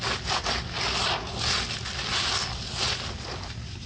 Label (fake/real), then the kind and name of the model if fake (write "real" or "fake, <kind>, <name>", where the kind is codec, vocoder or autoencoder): real